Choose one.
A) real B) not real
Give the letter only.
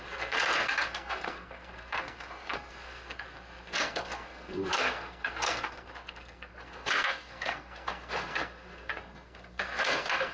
B